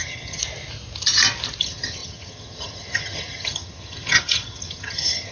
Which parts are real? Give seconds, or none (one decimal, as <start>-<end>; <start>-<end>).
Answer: 0.4-1.6